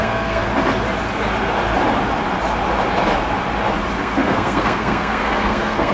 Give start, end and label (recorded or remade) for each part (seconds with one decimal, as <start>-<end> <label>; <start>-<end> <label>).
0.0-0.5 remade; 0.5-4.0 recorded; 4.0-5.9 remade